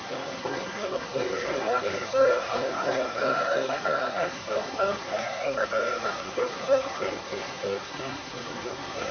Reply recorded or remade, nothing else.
remade